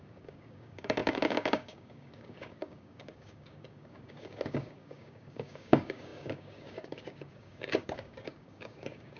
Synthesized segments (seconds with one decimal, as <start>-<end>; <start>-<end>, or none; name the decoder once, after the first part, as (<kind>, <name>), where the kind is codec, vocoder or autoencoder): 0.0-9.2 (codec, DAC)

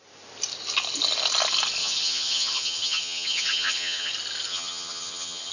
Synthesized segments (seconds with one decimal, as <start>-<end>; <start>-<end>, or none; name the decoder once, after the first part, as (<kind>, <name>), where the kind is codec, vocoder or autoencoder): 1.8-4.1 (vocoder, HiFi-GAN); 4.5-5.5